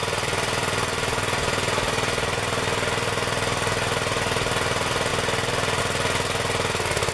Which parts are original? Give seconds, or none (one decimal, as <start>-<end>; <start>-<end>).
0.0-7.1